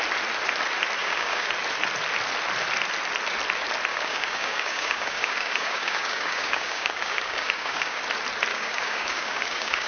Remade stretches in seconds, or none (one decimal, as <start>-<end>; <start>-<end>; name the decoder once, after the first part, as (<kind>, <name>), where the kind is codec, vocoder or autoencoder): 1.0-1.5 (codec, DAC); 3.9-8.0; 8.5-9.9